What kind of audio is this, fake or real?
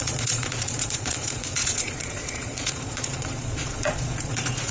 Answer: fake